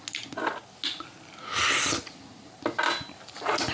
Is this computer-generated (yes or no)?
no